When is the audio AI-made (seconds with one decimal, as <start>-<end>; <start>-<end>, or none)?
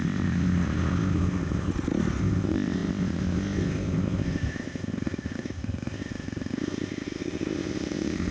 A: 0.0-1.7; 2.2-8.3